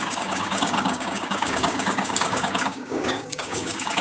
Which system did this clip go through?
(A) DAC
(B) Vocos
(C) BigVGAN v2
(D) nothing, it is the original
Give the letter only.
A